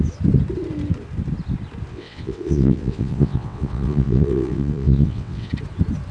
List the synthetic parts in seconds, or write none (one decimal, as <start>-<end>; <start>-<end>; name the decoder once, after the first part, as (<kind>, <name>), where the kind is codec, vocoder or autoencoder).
1.9-5.5 (vocoder, WaveNeXt)

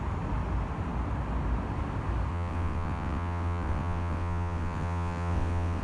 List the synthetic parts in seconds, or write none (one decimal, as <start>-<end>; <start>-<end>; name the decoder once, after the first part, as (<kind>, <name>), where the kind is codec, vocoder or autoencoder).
2.3-5.8 (vocoder, WaveNeXt)

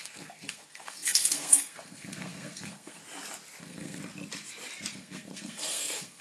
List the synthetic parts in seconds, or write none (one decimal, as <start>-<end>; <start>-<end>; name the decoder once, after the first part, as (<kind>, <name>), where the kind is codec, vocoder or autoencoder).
0.0-3.0 (codec, SNAC); 3.6-4.0; 4.9-6.2

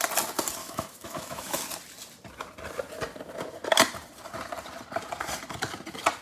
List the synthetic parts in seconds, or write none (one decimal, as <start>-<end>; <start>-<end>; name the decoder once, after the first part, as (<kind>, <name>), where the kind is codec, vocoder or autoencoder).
0.6-1.6 (autoencoder, DAC-VAE)

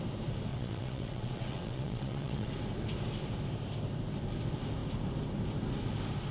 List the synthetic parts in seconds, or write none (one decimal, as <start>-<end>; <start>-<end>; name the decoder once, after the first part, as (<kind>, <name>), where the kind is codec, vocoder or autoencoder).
0.5-2.5 (vocoder, WaveNeXt)

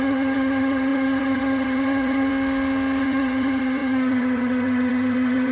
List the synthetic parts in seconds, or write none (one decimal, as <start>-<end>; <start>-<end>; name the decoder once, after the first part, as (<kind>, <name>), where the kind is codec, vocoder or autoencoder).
0.0-2.3 (vocoder, HiFi-GAN); 3.0-5.5

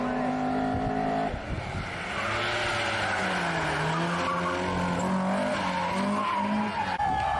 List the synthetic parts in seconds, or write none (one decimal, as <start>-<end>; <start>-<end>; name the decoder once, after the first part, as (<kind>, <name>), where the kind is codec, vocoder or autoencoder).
none

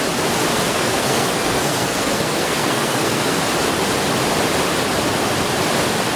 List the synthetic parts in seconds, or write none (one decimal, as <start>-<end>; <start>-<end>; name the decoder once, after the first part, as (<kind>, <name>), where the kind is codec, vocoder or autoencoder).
0.5-3.4 (codec, SNAC)